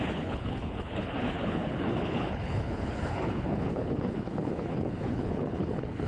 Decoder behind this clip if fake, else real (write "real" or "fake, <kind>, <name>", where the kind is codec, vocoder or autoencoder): fake, codec, HILCodec